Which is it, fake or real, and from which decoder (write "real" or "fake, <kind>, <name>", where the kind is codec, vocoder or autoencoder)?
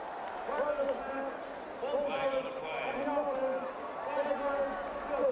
real